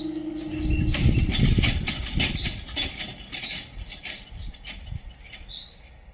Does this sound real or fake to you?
real